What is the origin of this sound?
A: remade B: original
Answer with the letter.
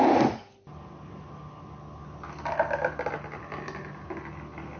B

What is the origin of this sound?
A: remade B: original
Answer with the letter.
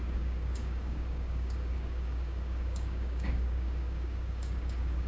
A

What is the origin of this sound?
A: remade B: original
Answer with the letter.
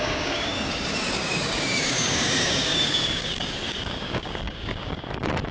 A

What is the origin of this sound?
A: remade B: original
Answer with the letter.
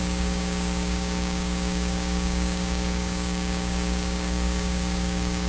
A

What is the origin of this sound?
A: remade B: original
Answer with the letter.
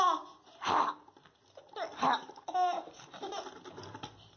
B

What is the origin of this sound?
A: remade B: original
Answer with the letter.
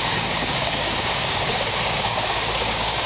A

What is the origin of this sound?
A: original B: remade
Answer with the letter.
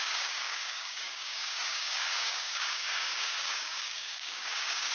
B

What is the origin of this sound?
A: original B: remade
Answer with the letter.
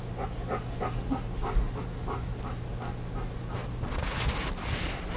A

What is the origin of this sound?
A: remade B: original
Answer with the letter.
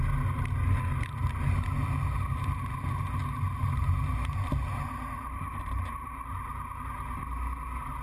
B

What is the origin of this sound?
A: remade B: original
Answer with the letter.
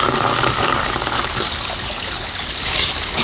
A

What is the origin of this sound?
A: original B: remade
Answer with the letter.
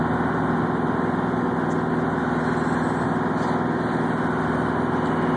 A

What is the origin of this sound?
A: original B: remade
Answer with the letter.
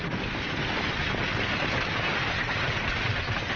A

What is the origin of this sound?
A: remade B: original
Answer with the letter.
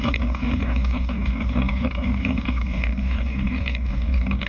A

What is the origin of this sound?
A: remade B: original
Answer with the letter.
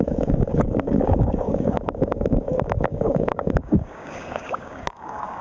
A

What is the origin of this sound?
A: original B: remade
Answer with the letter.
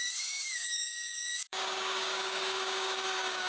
B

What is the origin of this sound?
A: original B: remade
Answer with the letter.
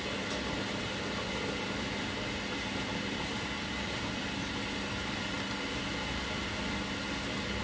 A